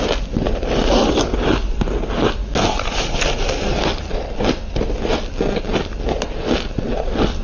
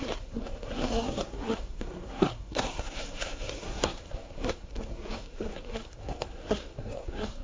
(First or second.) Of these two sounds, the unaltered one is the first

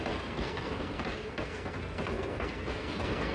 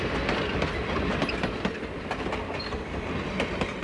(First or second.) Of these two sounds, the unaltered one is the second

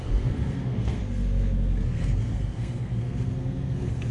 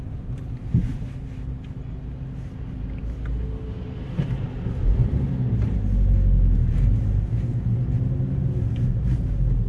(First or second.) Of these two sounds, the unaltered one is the second